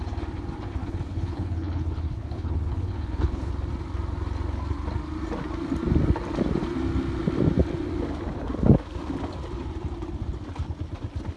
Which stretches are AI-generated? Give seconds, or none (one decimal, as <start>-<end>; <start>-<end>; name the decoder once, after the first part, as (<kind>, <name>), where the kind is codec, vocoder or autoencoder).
0.8-3.5 (codec, HILCodec)